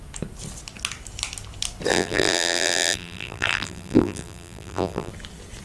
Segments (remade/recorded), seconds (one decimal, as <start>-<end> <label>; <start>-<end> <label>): 0.0-1.9 recorded; 1.9-5.1 remade; 5.1-5.6 recorded